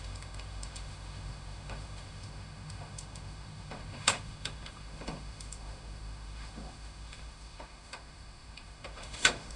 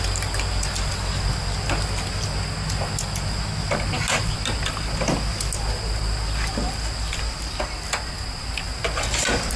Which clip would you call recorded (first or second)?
second